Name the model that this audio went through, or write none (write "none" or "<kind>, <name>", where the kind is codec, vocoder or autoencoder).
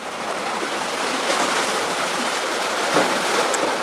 vocoder, BigVGAN v2